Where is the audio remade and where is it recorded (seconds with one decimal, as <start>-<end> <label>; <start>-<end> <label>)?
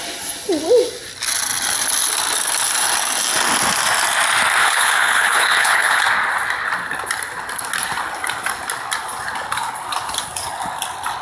0.0-4.6 recorded; 4.6-6.0 remade; 6.0-11.2 recorded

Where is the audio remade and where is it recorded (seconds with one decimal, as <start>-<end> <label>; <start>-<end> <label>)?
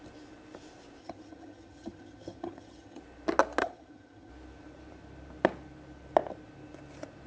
0.0-1.0 recorded; 1.0-3.0 remade; 3.0-3.6 recorded; 3.6-4.3 remade; 4.3-7.3 recorded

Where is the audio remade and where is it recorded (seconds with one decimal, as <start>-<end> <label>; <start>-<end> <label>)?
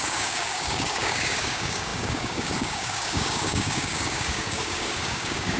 0.0-5.6 remade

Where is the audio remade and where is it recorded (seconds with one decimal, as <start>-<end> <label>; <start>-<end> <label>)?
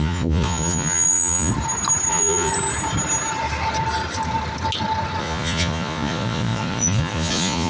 0.0-1.5 remade; 1.5-2.1 recorded; 2.1-2.5 remade; 2.5-5.2 recorded; 5.2-7.7 remade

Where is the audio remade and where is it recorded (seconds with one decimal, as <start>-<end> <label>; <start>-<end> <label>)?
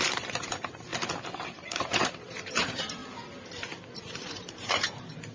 0.0-0.9 remade; 0.9-1.5 recorded; 1.5-3.0 remade; 3.0-4.0 recorded; 4.0-5.3 remade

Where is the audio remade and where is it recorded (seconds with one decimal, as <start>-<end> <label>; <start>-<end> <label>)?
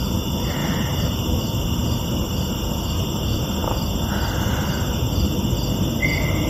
0.0-0.6 recorded; 0.6-1.4 remade; 1.4-6.5 recorded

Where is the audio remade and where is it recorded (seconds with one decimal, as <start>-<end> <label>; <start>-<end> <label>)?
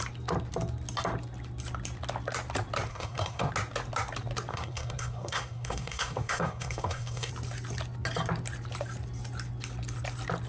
0.0-2.9 recorded; 2.9-3.5 remade; 3.5-4.5 recorded; 4.5-7.3 remade; 7.3-10.5 recorded